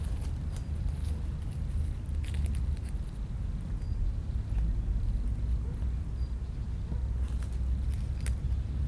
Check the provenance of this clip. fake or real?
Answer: real